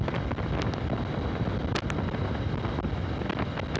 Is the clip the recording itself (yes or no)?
yes